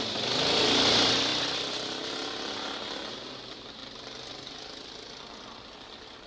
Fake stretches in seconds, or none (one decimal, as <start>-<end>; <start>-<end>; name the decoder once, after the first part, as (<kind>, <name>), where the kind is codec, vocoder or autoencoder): none